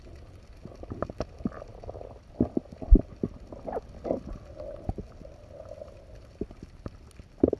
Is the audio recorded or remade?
recorded